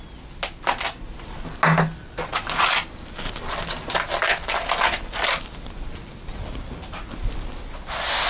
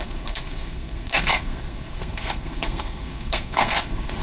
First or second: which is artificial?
second